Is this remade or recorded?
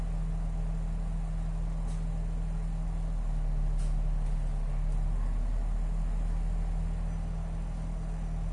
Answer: recorded